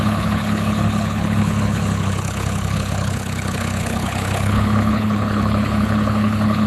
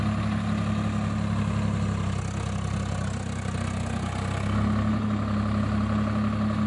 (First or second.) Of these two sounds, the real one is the second